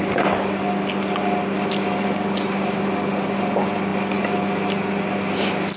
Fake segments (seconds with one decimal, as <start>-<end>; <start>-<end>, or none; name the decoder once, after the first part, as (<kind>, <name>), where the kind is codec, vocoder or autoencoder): none